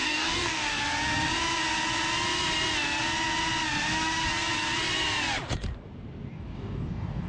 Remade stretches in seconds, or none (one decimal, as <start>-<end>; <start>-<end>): 0.0-0.8; 6.3-7.3